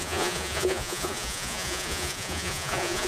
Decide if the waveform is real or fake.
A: fake